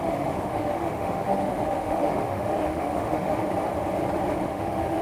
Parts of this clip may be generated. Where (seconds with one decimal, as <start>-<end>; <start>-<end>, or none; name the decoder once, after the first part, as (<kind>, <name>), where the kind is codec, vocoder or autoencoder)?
0.0-3.4 (autoencoder, DAC-VAE); 4.4-5.0